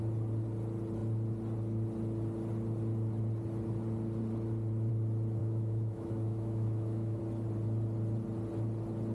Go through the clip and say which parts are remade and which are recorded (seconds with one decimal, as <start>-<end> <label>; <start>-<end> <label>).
0.0-5.4 recorded; 5.4-7.2 remade; 7.2-9.1 recorded